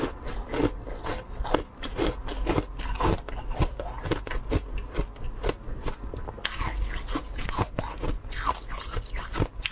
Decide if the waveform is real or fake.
real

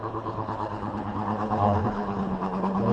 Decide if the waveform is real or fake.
fake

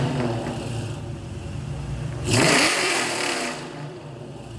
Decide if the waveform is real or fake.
fake